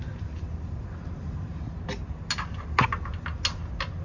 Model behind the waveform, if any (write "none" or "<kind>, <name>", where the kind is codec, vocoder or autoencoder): none